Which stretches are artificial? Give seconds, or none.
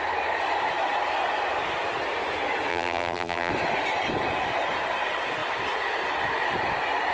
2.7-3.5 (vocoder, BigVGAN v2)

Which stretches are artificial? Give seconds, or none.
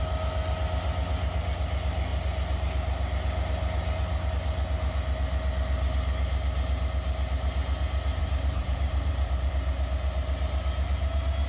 8.2-9.5 (vocoder, BigVGAN v2)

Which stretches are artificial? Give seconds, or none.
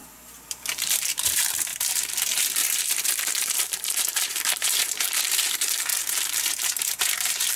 0.0-7.6 (vocoder, BigVGAN v2)